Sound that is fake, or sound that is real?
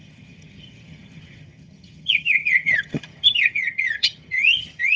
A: fake